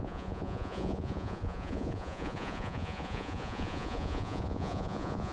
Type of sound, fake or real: fake